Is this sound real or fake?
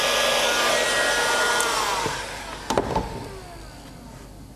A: real